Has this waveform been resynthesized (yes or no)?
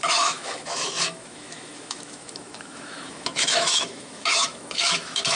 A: yes